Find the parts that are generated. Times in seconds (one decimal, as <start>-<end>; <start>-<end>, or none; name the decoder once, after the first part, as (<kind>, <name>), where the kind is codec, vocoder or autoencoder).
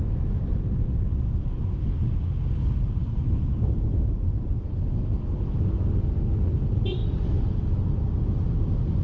none